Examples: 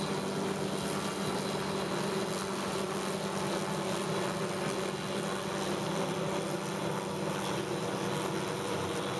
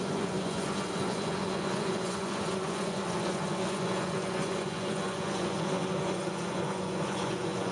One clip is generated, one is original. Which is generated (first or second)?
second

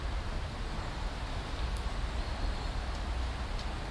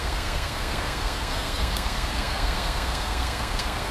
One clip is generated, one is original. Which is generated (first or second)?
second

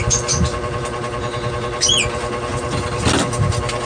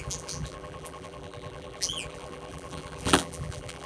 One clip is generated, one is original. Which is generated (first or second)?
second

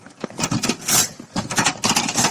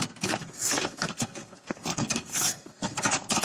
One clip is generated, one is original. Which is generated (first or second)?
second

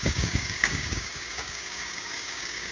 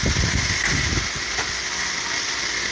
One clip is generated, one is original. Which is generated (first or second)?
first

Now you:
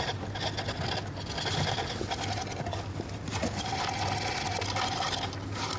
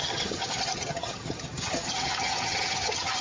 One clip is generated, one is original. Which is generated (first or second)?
second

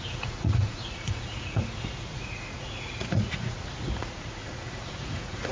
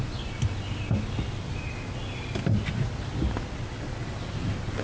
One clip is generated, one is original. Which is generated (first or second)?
first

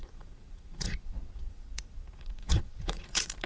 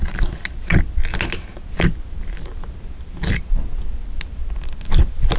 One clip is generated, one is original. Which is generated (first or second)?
first